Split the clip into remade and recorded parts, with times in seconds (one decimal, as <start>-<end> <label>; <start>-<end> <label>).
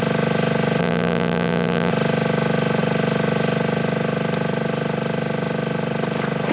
0.0-0.8 recorded; 0.8-1.9 remade; 1.9-6.5 recorded